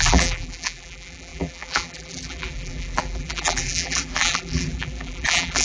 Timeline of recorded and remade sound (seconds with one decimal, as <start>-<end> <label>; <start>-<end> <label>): 0.0-5.6 remade